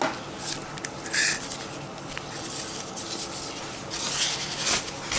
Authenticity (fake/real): real